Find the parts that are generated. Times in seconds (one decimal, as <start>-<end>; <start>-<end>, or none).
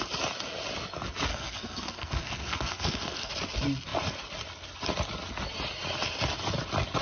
1.3-3.3